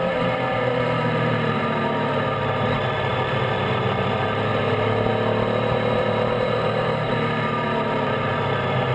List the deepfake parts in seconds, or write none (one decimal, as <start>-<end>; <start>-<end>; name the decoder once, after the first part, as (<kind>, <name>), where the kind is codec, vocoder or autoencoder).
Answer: 0.0-8.9 (vocoder, BigVGAN v2)